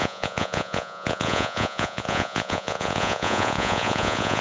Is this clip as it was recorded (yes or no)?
no